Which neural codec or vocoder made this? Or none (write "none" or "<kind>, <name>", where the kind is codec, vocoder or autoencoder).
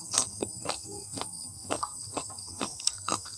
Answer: codec, SNAC